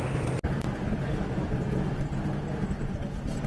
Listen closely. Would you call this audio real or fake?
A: real